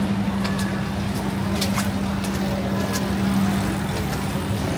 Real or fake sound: real